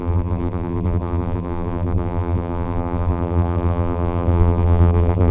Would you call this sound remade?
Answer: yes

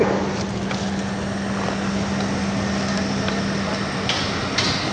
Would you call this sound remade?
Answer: no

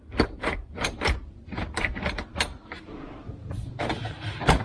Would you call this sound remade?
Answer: yes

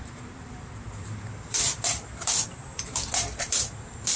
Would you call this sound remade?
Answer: yes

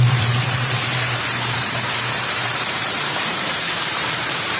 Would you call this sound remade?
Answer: yes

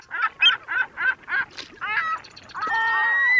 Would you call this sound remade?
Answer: no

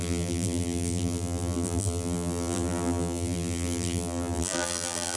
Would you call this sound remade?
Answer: yes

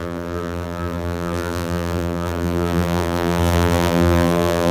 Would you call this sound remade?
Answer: yes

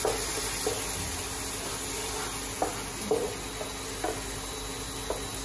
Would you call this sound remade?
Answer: no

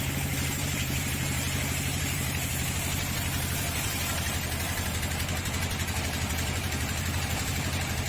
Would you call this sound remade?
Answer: yes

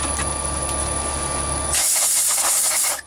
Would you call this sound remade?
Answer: no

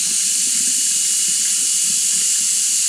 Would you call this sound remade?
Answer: no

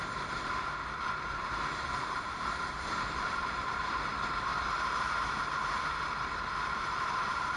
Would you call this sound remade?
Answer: yes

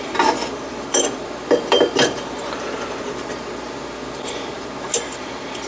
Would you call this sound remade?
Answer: yes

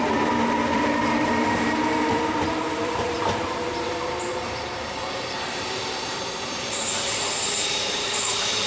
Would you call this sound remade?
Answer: yes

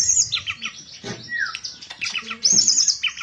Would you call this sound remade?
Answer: yes